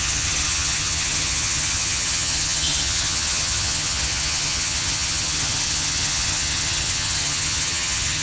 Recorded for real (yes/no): no